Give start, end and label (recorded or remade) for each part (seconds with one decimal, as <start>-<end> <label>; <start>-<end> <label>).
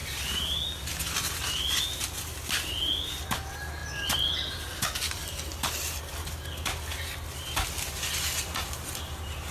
0.0-9.5 recorded